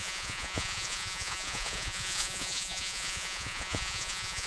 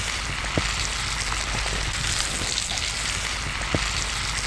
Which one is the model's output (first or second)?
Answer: first